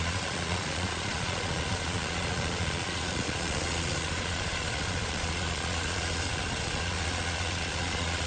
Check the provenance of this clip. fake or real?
fake